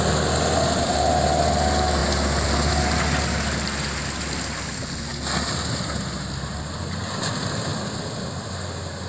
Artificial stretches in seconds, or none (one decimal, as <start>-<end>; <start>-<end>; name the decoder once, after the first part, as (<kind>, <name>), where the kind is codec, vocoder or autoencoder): none